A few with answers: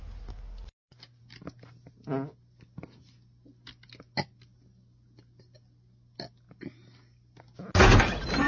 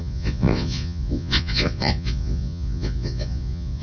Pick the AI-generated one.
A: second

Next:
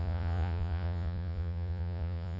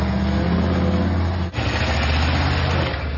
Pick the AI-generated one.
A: first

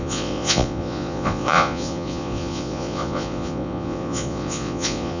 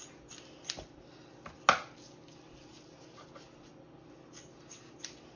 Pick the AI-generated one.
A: first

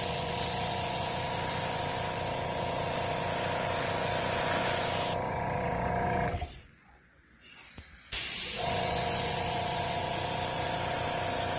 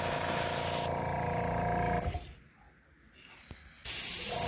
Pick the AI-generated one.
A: first